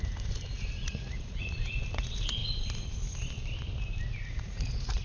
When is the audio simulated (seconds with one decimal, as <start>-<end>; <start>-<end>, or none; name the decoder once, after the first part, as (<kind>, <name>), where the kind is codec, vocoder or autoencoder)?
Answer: 0.0-2.4 (vocoder, Vocos); 4.3-5.0